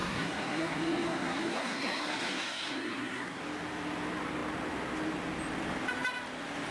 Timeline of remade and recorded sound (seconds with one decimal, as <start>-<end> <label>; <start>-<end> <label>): 0.0-3.4 remade; 3.4-6.7 recorded